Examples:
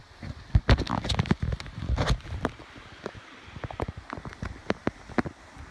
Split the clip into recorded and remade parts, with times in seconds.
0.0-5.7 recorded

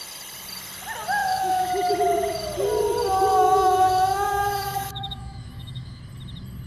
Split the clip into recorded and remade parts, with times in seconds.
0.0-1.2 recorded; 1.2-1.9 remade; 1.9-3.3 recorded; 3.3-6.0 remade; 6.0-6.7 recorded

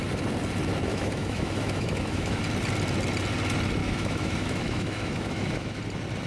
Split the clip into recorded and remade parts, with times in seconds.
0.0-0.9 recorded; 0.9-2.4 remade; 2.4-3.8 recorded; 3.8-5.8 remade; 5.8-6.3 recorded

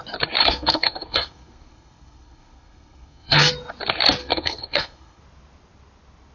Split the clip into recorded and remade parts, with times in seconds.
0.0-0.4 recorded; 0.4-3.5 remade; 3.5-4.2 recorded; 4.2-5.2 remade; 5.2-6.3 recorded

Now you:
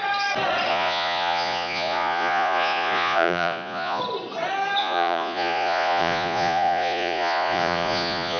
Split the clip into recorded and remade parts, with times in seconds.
0.0-0.7 recorded; 0.7-4.0 remade; 4.0-4.8 recorded; 4.8-8.4 remade

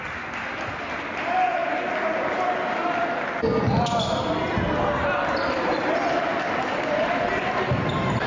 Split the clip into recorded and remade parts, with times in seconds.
0.0-1.6 remade; 1.6-6.6 recorded; 6.6-8.3 remade